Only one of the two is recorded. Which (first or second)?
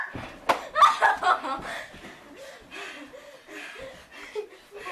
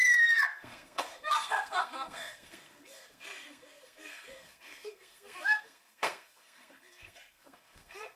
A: first